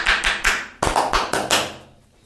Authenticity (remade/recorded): recorded